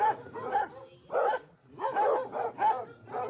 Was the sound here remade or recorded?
recorded